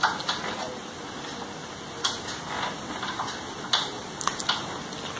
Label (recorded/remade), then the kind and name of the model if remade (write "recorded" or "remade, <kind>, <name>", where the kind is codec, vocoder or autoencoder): recorded